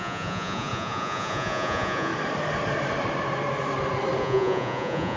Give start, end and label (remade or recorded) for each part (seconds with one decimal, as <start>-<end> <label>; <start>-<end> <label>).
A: 0.0-2.1 remade; 2.1-4.2 recorded; 4.2-5.2 remade